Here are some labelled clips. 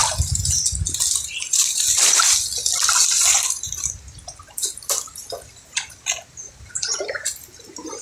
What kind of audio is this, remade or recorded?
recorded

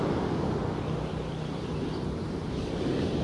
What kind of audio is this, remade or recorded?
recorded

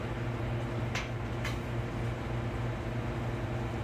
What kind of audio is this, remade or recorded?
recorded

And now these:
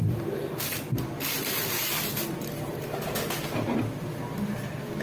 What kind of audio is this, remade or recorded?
recorded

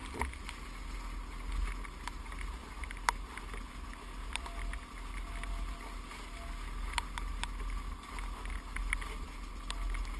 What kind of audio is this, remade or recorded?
recorded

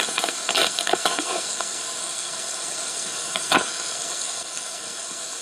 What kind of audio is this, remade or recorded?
remade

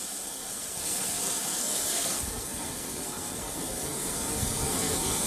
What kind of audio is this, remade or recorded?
remade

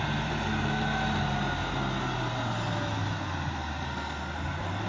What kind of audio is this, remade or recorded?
recorded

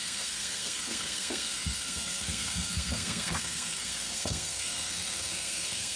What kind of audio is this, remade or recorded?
remade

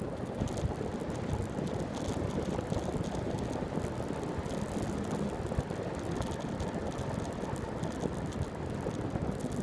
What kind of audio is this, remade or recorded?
recorded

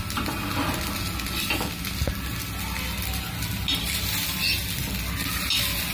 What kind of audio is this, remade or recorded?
recorded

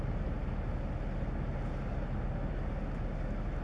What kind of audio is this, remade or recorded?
recorded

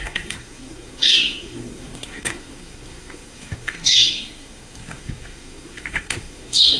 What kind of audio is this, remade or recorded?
remade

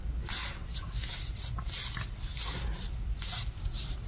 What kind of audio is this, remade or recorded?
recorded